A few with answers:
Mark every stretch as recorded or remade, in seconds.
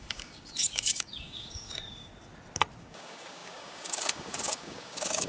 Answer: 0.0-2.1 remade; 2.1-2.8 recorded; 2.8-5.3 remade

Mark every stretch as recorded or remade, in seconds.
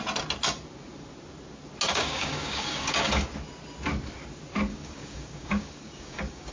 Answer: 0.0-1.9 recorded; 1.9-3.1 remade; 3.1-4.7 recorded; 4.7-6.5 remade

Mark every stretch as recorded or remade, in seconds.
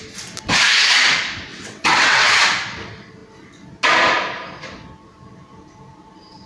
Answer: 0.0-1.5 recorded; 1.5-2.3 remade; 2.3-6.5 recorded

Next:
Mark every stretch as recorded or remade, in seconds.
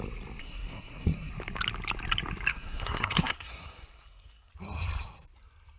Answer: 0.0-0.4 recorded; 0.4-1.3 remade; 1.3-2.5 recorded; 2.5-4.5 remade; 4.5-5.8 recorded